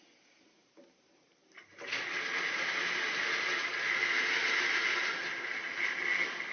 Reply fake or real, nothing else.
real